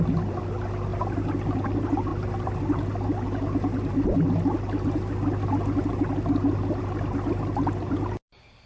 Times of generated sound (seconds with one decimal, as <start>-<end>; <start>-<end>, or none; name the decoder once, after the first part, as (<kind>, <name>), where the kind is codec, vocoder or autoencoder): none